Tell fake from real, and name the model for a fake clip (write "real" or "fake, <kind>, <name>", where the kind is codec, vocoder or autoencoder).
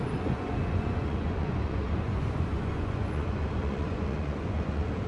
fake, vocoder, Vocos